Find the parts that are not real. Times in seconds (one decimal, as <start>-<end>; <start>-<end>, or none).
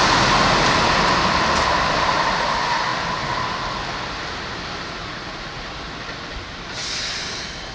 5.0-5.8